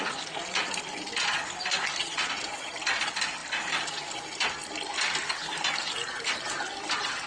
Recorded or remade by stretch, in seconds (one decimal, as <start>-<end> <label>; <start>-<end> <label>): 0.0-2.0 recorded; 2.0-2.7 remade; 2.7-7.3 recorded